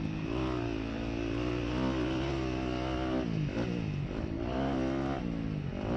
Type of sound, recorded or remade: recorded